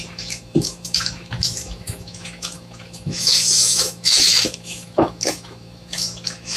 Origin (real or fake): fake